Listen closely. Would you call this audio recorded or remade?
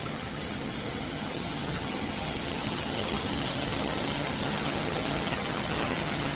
remade